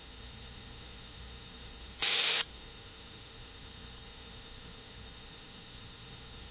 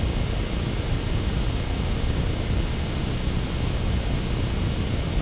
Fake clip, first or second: first